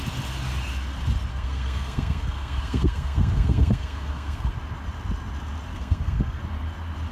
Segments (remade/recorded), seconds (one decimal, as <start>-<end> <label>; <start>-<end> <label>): 0.0-1.3 recorded; 1.3-4.5 remade; 4.5-5.7 recorded; 5.7-6.4 remade; 6.4-7.1 recorded